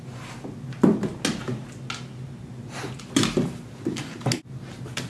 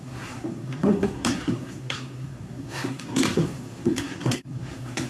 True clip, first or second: first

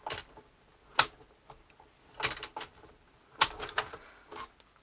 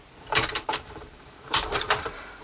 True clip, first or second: first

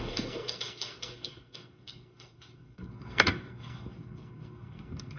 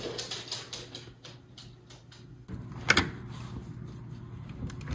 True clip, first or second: second